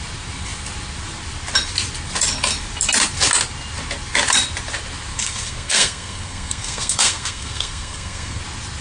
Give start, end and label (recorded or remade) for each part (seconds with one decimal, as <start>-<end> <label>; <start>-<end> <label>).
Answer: 0.0-5.1 recorded; 5.1-8.4 remade; 8.4-8.8 recorded